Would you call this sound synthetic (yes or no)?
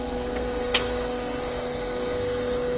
yes